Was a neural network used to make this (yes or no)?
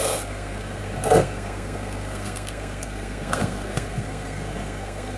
yes